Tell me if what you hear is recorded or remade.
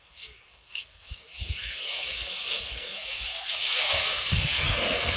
remade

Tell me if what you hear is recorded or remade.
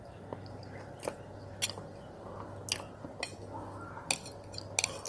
recorded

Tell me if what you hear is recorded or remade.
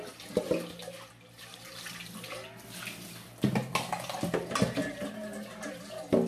recorded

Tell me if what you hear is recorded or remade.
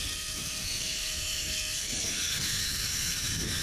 remade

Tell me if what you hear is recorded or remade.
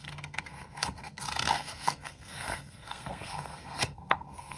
remade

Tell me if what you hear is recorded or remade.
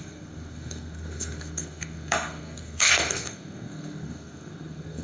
remade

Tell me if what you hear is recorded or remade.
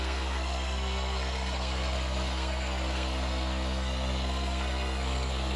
remade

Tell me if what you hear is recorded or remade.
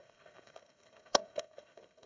remade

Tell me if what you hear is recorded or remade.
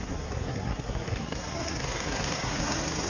remade